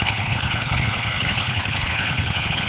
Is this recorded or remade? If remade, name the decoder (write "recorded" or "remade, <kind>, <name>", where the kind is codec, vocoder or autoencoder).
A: remade, codec, HILCodec